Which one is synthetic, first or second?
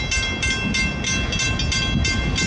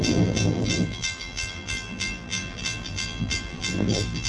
second